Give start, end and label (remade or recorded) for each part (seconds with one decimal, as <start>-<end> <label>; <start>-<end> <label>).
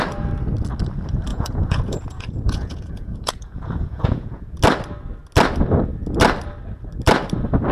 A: 0.0-1.3 recorded; 1.3-4.6 remade; 4.6-7.7 recorded